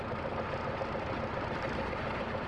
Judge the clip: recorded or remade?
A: recorded